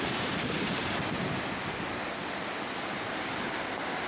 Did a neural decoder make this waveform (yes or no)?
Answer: no